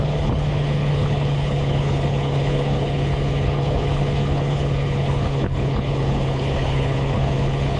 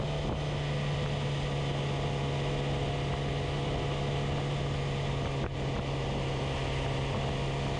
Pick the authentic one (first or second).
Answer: second